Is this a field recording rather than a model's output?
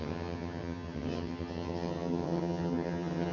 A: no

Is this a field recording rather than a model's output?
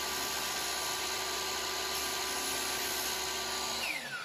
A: yes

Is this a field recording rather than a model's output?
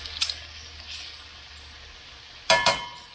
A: yes